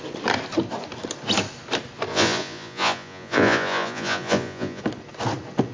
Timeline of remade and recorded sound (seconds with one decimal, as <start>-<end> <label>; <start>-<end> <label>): 0.0-2.1 recorded; 2.1-4.8 remade; 4.8-5.7 recorded